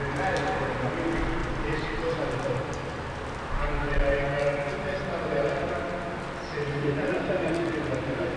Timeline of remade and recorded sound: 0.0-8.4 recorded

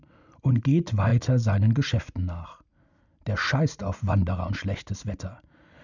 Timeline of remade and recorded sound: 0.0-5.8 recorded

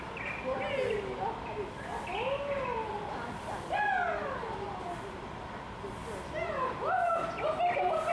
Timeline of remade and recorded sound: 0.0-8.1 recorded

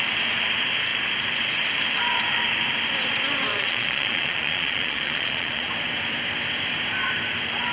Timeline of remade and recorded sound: 0.0-3.5 recorded; 3.5-5.7 remade; 5.7-7.7 recorded

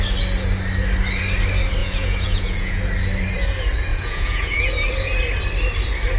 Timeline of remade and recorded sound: 0.0-1.8 recorded; 1.8-2.8 remade; 2.8-3.9 recorded; 3.9-4.7 remade; 4.7-6.2 recorded

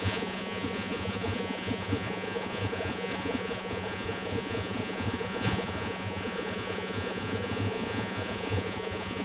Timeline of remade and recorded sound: 0.0-9.2 remade